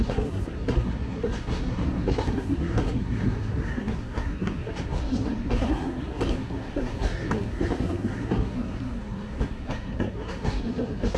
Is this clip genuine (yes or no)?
no